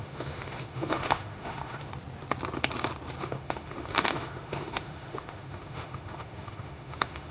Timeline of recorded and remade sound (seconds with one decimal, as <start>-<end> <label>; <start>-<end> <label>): 0.0-1.9 remade; 1.9-3.2 recorded; 3.2-7.3 remade